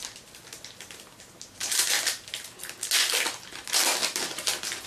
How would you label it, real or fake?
real